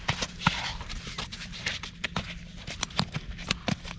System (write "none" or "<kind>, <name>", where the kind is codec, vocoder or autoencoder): none